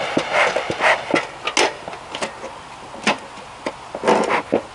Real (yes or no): yes